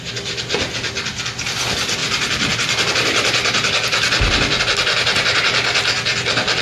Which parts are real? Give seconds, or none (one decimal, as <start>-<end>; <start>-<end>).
0.0-6.6